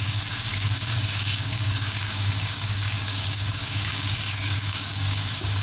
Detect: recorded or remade remade